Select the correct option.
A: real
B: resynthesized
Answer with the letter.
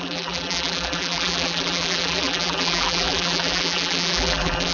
B